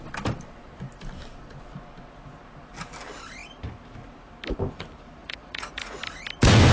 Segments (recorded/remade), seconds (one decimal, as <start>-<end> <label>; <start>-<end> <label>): 0.0-5.2 recorded; 5.2-6.0 remade; 6.0-6.7 recorded